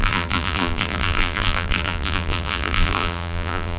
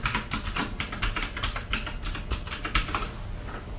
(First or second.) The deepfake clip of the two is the first